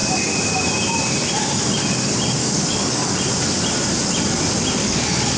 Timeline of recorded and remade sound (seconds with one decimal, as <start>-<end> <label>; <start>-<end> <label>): 0.0-2.4 recorded; 2.4-3.1 remade; 3.1-4.8 recorded; 4.8-5.4 remade

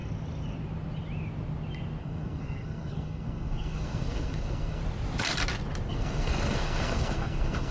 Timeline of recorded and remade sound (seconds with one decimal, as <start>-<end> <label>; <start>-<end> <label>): 0.0-2.0 recorded; 2.0-4.8 remade; 4.8-5.9 recorded; 5.9-7.7 remade